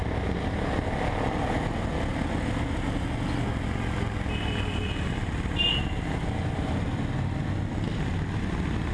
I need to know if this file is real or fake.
real